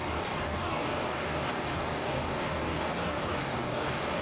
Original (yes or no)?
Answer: no